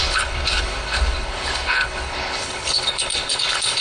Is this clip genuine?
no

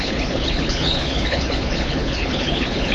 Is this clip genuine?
no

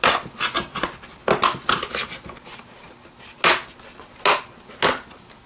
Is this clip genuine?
yes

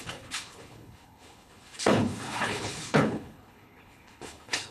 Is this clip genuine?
no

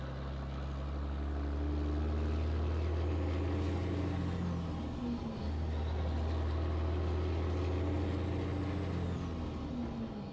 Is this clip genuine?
yes